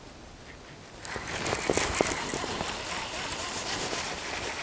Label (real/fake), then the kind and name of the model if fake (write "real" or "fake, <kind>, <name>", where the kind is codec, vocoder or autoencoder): real